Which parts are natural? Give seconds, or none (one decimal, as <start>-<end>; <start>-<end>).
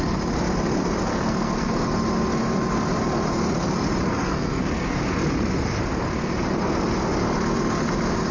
0.0-1.1; 1.7-4.1; 5.0-8.3